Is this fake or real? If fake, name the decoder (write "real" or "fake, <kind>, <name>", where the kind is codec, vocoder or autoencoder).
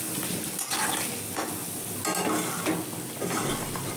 real